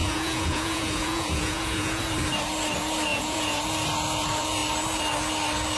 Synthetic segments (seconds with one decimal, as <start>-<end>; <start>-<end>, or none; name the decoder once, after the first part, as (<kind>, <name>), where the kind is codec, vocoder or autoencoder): 0.0-2.0 (vocoder, Vocos); 3.1-3.6